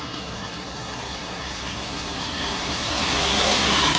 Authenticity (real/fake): fake